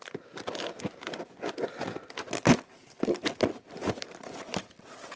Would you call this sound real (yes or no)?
yes